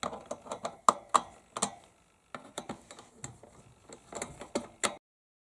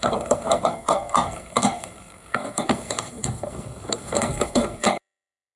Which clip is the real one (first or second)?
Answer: first